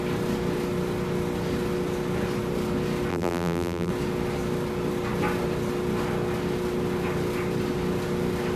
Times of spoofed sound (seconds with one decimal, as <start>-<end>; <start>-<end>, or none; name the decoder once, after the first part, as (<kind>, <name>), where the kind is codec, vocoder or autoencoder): 3.1-3.9 (vocoder, BigVGAN v2)